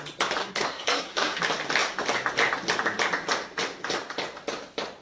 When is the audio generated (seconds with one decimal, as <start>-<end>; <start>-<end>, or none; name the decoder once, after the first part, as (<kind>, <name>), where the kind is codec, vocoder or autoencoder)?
0.4-1.4 (codec, SNAC)